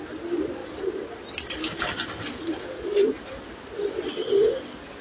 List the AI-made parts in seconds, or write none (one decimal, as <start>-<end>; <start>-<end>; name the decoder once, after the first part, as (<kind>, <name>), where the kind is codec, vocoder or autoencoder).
none